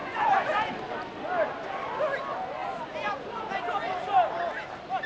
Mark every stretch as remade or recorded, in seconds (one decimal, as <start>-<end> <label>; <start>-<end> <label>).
0.0-0.7 remade; 0.7-5.1 recorded